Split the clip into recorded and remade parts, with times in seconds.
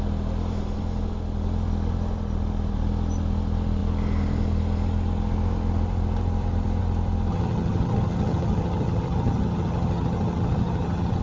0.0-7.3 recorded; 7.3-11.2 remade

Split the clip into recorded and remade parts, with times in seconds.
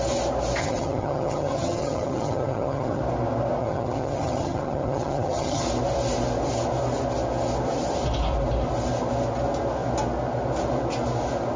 0.0-0.6 recorded; 0.6-3.0 remade; 3.0-3.6 recorded; 3.6-5.6 remade; 5.6-11.6 recorded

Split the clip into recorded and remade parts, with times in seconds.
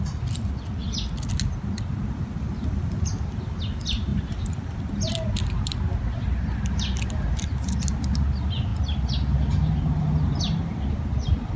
0.0-11.6 recorded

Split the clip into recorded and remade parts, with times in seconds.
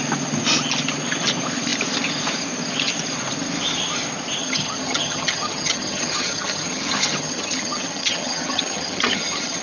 0.0-4.4 recorded; 4.4-9.6 remade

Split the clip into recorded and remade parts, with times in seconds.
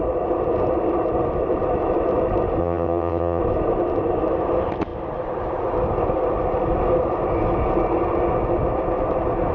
0.0-2.6 recorded; 2.6-3.4 remade; 3.4-9.5 recorded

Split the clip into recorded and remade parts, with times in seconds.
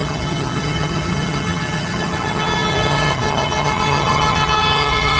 0.0-5.2 remade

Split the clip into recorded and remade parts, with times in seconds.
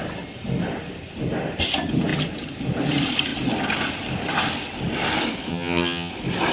0.0-5.5 recorded; 5.5-6.1 remade; 6.1-6.5 recorded